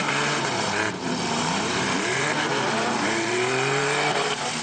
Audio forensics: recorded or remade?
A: remade